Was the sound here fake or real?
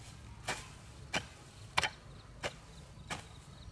real